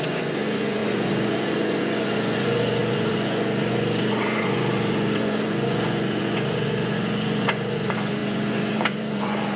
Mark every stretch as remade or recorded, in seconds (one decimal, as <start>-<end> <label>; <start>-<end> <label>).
0.0-9.6 remade